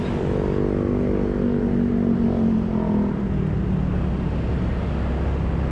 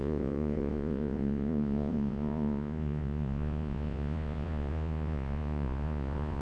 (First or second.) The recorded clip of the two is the first